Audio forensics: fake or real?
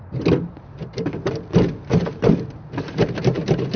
real